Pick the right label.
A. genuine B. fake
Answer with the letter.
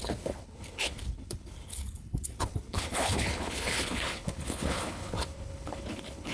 B